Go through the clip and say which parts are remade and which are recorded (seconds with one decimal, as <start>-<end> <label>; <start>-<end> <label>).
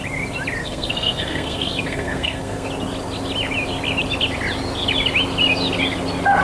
0.0-0.6 recorded; 0.6-2.7 remade; 2.7-6.4 recorded